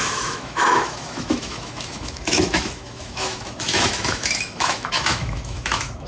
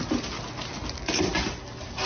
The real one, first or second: second